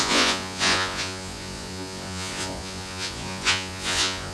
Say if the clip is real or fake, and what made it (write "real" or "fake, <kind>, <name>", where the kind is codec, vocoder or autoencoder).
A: fake, vocoder, Vocos